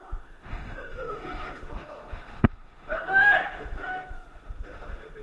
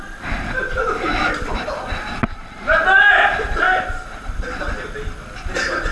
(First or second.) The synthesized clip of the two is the first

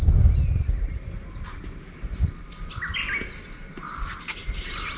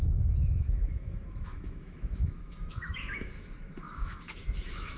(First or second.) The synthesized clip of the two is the second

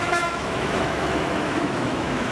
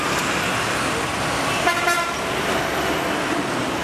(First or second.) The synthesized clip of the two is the first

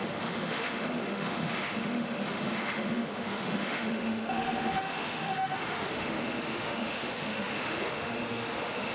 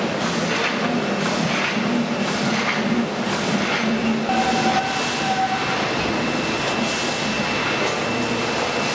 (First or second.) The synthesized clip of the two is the first